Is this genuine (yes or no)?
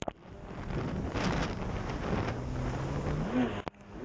yes